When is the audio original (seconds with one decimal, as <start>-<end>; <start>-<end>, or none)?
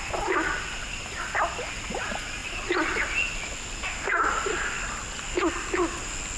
0.0-6.4